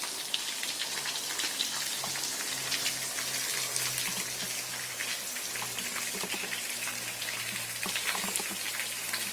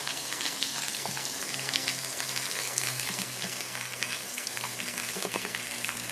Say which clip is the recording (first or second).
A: first